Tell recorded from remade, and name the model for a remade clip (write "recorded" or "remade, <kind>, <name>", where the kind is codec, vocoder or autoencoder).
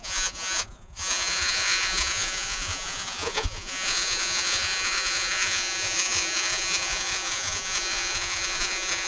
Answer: remade, vocoder, Vocos